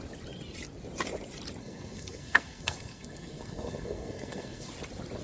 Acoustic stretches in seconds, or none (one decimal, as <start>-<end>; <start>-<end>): 0.0-1.6; 4.7-5.2